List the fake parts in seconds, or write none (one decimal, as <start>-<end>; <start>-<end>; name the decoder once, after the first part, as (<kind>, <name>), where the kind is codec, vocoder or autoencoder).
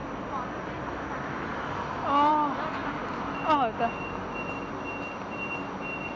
none